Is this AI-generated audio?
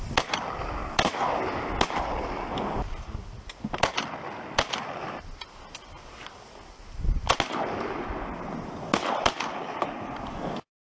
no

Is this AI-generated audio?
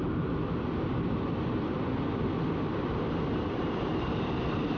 yes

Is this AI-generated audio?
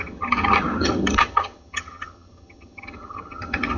yes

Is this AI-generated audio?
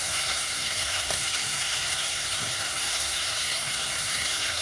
yes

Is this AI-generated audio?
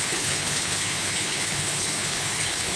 yes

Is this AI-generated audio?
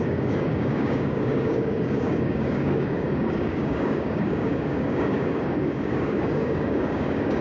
yes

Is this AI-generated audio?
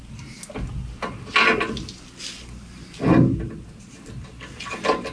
no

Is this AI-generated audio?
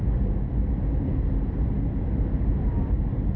no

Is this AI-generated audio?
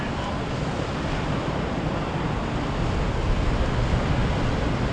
no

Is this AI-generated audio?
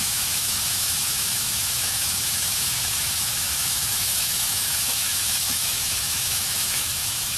yes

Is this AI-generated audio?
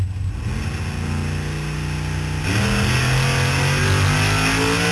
no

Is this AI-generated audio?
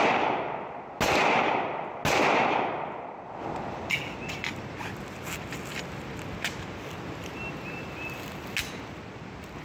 no